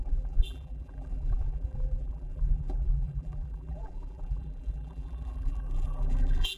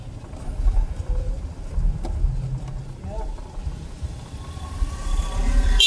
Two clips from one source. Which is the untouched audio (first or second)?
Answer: second